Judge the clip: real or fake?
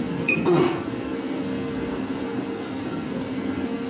fake